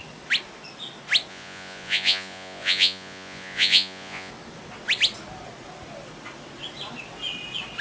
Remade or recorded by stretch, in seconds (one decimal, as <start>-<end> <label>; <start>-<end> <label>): 0.0-1.3 recorded; 1.3-4.3 remade; 4.3-7.8 recorded